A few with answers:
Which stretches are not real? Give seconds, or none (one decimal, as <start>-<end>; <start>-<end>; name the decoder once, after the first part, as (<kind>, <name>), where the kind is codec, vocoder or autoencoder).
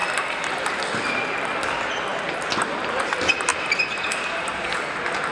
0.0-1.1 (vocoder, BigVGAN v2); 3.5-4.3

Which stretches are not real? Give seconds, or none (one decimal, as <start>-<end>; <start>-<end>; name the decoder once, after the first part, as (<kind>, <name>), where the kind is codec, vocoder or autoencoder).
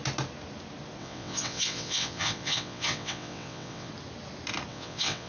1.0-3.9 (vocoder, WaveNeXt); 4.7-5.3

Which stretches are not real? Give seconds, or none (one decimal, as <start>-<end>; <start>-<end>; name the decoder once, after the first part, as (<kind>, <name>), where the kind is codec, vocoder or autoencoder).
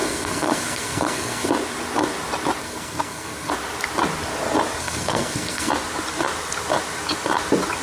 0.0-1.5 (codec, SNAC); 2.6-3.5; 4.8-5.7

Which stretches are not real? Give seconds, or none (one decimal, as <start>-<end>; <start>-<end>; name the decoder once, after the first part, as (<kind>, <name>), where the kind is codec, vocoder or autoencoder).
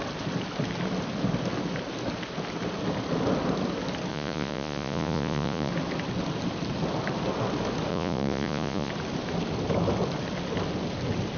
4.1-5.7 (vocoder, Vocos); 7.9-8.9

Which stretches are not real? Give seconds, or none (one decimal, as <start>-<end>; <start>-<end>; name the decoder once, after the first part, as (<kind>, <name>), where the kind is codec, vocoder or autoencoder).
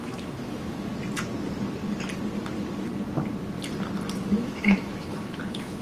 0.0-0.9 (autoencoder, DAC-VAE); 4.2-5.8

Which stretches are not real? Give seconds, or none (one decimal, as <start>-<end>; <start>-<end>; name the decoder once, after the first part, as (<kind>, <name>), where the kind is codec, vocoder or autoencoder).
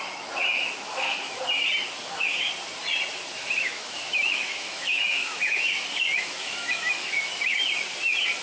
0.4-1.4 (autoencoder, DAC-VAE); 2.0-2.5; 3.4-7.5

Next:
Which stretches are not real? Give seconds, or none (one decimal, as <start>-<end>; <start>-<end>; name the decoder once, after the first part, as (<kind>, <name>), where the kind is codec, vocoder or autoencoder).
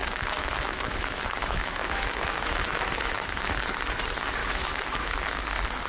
0.0-3.5 (autoencoder, DAC-VAE); 4.4-5.4